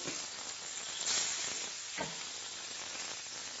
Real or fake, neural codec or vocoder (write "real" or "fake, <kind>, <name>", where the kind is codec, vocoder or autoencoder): real